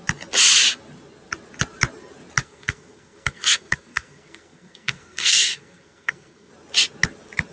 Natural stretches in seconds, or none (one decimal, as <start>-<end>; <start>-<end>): 0.0-2.4; 6.5-7.5